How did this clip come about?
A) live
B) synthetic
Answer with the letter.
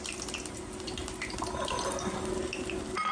A